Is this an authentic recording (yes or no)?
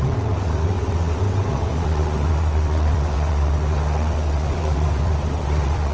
no